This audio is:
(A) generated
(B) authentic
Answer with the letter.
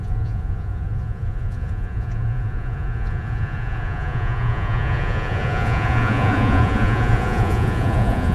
A